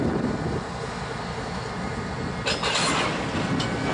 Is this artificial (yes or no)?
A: no